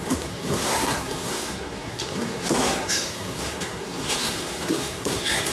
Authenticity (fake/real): fake